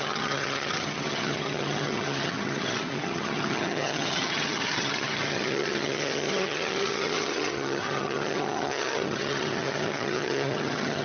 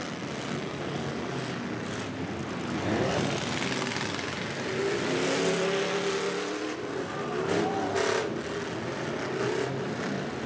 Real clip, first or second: second